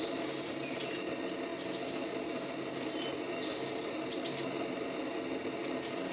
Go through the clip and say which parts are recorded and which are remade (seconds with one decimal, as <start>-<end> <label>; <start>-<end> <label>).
0.0-6.1 recorded